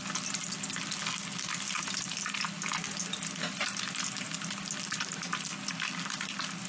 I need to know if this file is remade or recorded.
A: recorded